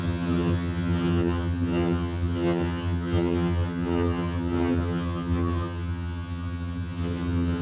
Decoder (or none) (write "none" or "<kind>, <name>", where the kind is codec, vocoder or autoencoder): vocoder, HiFi-GAN